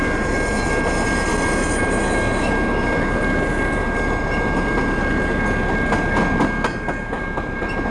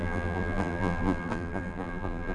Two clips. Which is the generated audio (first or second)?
second